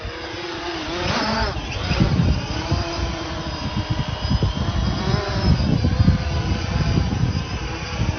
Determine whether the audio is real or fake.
real